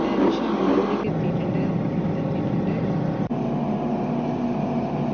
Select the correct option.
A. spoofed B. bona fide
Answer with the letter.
B